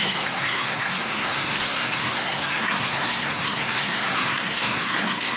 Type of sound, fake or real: fake